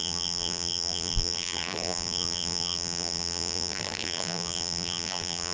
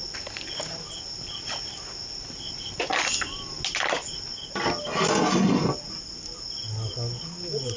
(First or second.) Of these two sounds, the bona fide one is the second